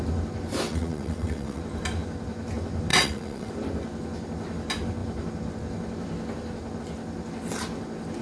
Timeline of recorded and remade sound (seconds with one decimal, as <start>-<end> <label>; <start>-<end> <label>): 0.0-0.7 recorded; 0.7-1.6 remade; 1.6-2.9 recorded; 2.9-3.5 remade; 3.5-8.2 recorded